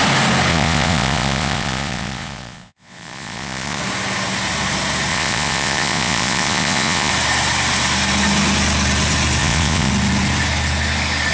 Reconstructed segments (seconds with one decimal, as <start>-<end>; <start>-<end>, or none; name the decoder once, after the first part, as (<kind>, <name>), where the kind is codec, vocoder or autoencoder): 0.5-3.8 (vocoder, Vocos); 5.1-7.1; 9.4-9.9